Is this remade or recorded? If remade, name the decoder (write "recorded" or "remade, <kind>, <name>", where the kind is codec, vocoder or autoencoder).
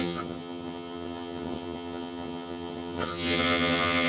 remade, vocoder, HiFi-GAN